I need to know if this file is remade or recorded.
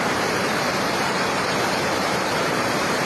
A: remade